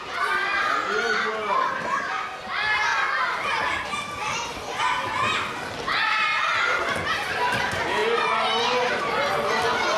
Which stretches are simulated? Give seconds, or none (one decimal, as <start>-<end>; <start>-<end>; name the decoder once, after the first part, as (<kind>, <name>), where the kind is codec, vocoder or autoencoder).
none